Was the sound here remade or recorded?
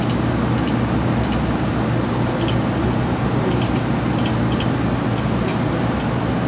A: recorded